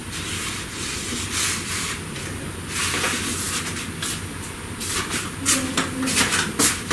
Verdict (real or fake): real